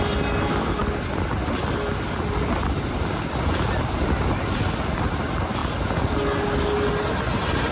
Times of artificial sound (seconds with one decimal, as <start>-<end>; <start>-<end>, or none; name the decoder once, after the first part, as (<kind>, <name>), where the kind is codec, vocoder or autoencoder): none